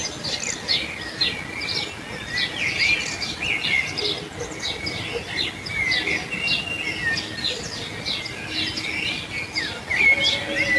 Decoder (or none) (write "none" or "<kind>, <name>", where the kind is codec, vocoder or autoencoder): none